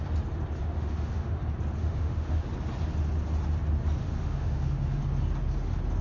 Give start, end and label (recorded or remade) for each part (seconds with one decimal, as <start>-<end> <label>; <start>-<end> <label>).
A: 0.0-0.6 recorded; 0.6-1.4 remade; 1.4-1.8 recorded; 1.8-2.5 remade; 2.5-4.0 recorded; 4.0-5.0 remade; 5.0-6.0 recorded